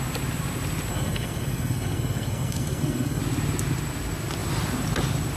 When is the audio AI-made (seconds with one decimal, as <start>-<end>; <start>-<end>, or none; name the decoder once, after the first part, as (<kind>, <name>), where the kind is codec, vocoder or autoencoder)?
0.9-3.2 (codec, SNAC)